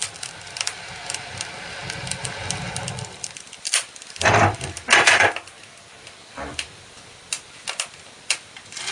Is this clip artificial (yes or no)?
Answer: no